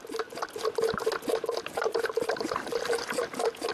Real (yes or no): yes